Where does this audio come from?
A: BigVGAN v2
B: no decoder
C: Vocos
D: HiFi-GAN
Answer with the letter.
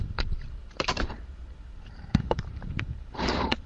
A